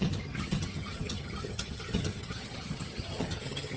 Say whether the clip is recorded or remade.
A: remade